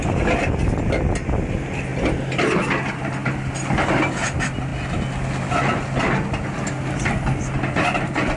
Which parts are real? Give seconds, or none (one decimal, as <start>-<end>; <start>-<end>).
0.0-8.4